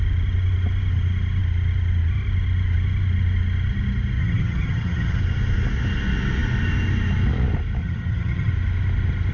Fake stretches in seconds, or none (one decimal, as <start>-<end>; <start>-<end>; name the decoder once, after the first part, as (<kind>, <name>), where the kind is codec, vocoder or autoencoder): 4.2-5.2 (vocoder, HiFi-GAN); 7.8-8.5